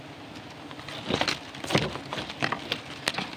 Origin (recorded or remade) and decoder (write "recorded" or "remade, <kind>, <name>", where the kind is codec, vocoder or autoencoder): recorded